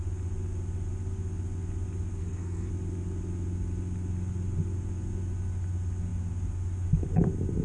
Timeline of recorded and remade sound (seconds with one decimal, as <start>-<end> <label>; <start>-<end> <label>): 0.0-2.2 recorded; 2.2-2.7 remade; 2.7-7.6 recorded